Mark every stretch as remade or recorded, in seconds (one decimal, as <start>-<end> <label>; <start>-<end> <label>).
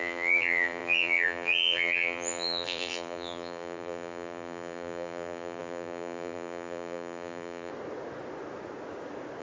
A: 0.0-7.7 remade; 7.7-9.4 recorded